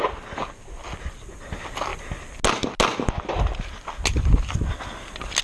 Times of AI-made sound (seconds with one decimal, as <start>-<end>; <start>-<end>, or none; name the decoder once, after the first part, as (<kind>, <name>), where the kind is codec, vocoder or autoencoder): none